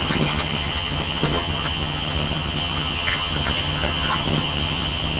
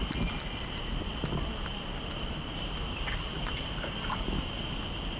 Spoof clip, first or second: first